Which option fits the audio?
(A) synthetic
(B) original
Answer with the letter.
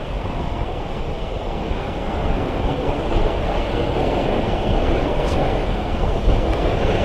A